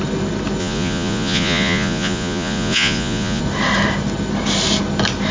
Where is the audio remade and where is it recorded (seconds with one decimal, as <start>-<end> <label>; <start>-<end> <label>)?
0.0-0.6 recorded; 0.6-3.4 remade; 3.4-5.3 recorded